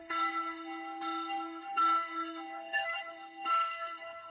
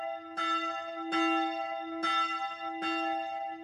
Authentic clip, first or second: second